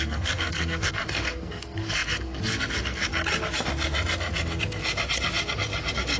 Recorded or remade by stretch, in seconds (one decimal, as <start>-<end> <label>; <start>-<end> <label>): 0.0-3.1 remade; 3.1-6.2 recorded